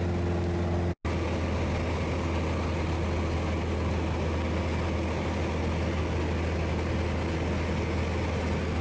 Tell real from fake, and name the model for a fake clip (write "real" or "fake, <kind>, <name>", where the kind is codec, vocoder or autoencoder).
real